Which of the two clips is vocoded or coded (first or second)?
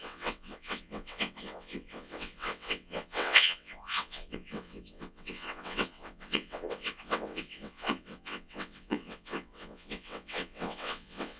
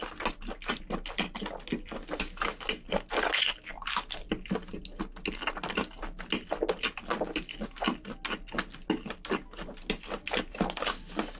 first